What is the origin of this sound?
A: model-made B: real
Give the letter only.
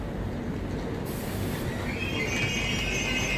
B